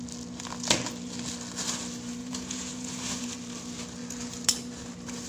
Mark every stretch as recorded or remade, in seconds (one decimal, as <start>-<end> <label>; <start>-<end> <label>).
0.0-2.2 recorded; 2.2-3.2 remade; 3.2-5.3 recorded